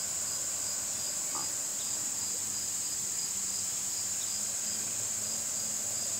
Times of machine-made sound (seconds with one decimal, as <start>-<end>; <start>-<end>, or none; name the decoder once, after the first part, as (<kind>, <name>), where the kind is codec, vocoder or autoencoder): none